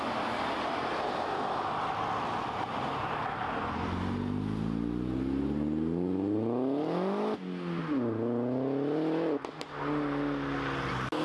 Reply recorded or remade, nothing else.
recorded